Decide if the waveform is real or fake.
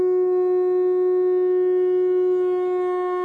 real